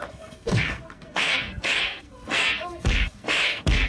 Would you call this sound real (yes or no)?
no